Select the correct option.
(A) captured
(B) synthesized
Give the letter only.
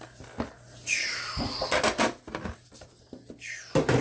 A